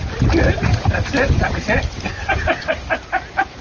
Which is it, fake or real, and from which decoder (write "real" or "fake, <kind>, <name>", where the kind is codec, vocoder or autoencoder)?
real